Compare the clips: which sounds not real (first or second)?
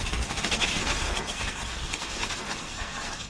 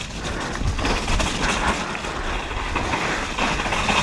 first